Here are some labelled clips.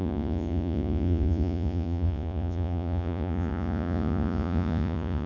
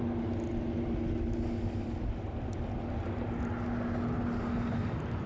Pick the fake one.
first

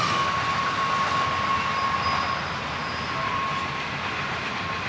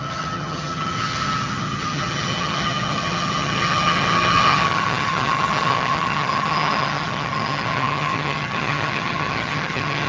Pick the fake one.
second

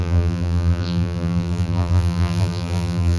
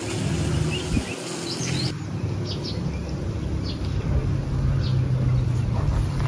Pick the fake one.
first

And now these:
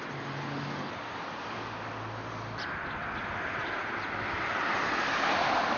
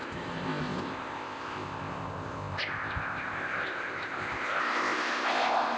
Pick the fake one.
second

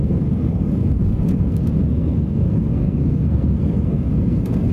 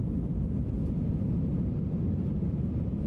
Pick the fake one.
first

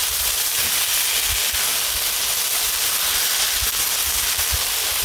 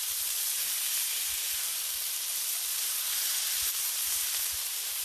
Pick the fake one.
second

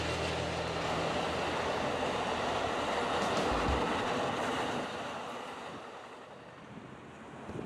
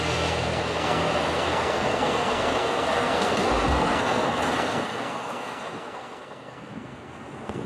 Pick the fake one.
second